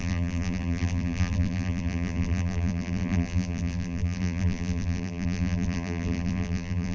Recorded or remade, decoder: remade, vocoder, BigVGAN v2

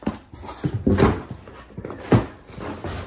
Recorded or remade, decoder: recorded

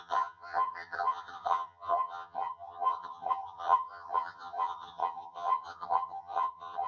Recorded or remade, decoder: remade, vocoder, HiFi-GAN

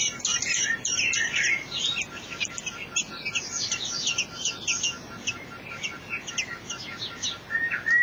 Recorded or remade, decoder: recorded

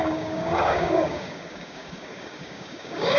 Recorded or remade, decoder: remade, codec, DAC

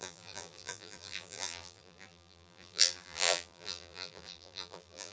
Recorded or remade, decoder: remade, vocoder, BigVGAN v2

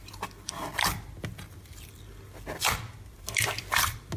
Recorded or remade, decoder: recorded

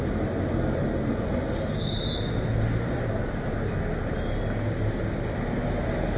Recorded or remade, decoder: recorded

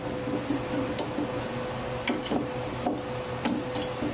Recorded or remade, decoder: recorded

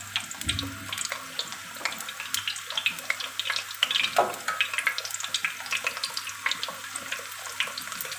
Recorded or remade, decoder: recorded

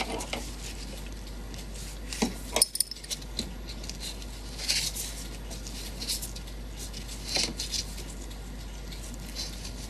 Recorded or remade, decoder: recorded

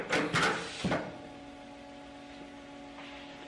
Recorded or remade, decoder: recorded